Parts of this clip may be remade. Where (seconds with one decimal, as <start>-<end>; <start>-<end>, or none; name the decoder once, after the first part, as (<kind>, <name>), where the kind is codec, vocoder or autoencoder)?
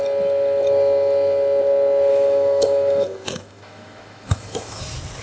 2.1-4.8 (autoencoder, DAC-VAE)